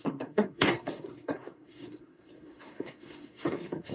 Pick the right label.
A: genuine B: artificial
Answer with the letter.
B